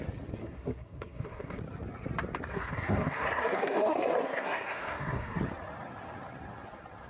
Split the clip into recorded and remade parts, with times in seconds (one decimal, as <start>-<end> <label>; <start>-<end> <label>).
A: 0.0-0.4 recorded; 0.4-1.6 remade; 1.6-2.5 recorded; 2.5-5.4 remade; 5.4-7.1 recorded

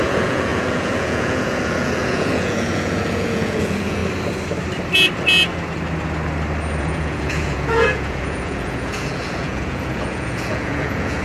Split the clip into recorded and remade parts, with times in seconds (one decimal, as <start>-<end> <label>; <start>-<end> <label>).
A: 0.0-4.0 remade; 4.0-6.8 recorded; 6.8-11.2 remade

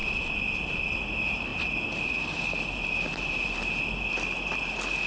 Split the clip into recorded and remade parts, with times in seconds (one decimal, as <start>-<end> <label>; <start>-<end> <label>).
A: 0.0-5.1 recorded

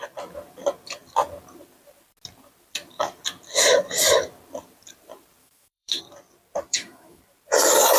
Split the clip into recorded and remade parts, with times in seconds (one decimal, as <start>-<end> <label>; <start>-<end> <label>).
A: 0.0-5.4 recorded; 5.4-6.0 remade; 6.0-6.7 recorded; 6.7-7.2 remade; 7.2-8.0 recorded

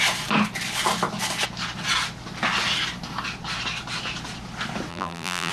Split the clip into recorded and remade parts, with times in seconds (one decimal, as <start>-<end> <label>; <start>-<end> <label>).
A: 0.0-4.9 recorded; 4.9-5.5 remade

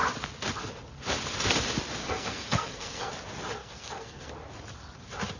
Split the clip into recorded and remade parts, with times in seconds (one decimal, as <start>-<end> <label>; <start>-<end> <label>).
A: 0.0-2.0 recorded; 2.0-3.1 remade; 3.1-3.6 recorded; 3.6-4.3 remade; 4.3-5.4 recorded

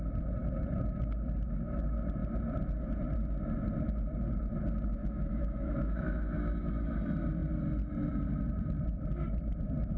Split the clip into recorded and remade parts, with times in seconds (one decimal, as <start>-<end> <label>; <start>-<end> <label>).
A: 0.0-5.0 recorded; 5.0-7.0 remade; 7.0-10.0 recorded

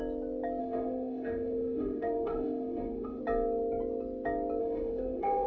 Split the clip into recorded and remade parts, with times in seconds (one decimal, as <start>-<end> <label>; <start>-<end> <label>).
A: 0.0-0.6 recorded; 0.6-3.2 remade; 3.2-4.6 recorded; 4.6-5.5 remade